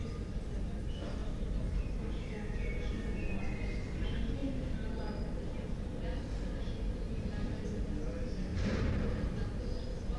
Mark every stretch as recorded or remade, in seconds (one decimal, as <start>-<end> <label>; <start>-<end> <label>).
0.0-4.4 recorded; 4.4-5.0 remade; 5.0-8.5 recorded; 8.5-9.5 remade; 9.5-10.2 recorded